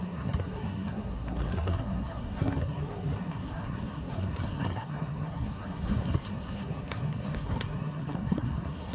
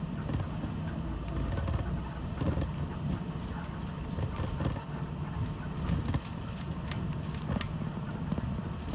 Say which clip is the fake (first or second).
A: first